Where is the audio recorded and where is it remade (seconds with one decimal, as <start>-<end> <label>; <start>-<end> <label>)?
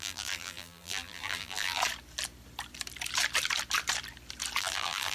0.0-1.8 remade; 1.8-4.6 recorded; 4.6-5.1 remade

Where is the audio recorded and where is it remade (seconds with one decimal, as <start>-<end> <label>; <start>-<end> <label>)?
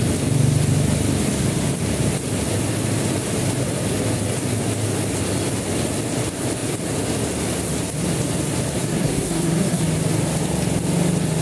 0.0-8.8 recorded; 8.8-9.8 remade; 9.8-11.4 recorded